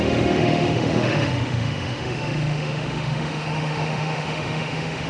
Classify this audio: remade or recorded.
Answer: remade